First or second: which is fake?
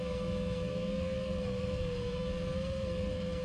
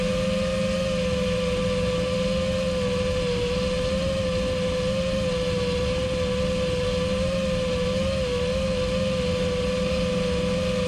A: first